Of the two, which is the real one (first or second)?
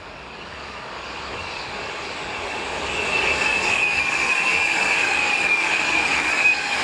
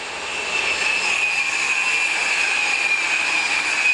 second